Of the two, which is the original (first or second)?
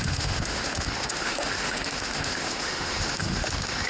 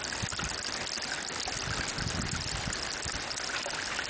second